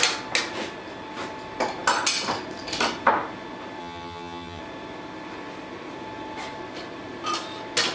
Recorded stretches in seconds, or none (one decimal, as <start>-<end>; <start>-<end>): 0.0-3.8; 4.6-7.9